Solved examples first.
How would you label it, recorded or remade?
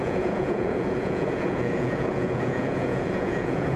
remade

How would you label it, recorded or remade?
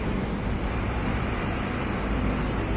recorded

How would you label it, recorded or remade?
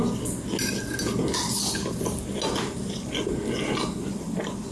recorded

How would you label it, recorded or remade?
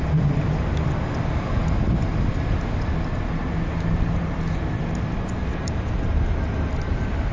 recorded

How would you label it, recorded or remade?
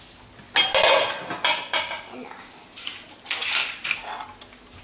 recorded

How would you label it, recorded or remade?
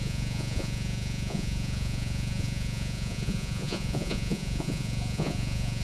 remade